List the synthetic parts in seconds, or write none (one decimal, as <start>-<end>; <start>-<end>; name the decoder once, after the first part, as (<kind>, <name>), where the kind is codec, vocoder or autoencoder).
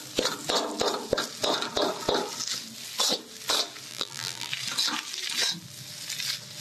3.9-4.5 (vocoder, BigVGAN v2)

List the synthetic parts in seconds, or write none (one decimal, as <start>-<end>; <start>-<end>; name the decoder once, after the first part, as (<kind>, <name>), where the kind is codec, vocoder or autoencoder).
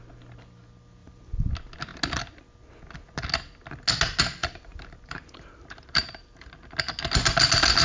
1.0-1.5 (vocoder, BigVGAN v2); 4.4-6.5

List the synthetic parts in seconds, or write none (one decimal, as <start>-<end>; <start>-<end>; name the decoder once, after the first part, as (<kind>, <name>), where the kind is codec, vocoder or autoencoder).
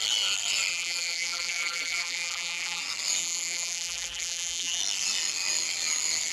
0.7-2.8 (vocoder, BigVGAN v2); 3.2-4.8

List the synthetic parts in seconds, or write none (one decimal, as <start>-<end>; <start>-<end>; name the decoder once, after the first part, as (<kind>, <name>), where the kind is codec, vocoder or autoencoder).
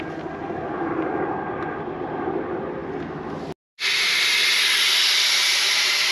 none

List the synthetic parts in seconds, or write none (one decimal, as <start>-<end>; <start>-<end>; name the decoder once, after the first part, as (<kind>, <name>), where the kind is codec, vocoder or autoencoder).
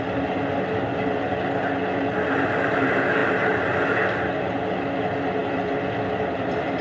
5.4-6.8 (vocoder, BigVGAN v2)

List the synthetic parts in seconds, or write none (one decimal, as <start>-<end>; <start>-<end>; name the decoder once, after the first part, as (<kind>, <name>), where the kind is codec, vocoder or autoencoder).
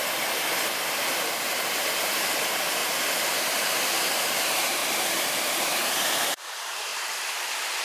1.5-2.8 (vocoder, BigVGAN v2); 3.4-4.8; 5.9-6.9